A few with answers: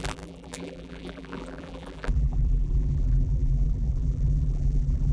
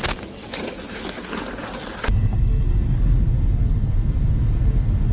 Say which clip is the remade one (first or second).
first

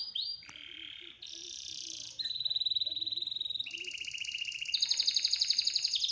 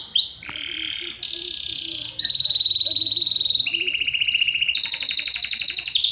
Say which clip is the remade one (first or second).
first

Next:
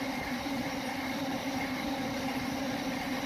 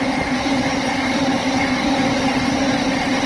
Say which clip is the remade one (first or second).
first